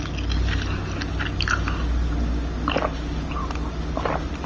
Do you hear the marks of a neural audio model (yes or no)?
no